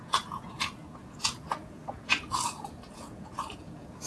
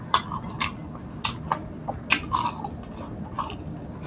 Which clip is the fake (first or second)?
first